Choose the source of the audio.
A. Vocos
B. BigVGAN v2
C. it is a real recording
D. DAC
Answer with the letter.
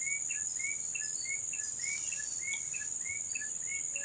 C